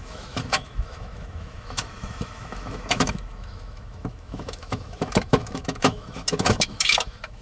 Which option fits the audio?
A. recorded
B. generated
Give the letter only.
B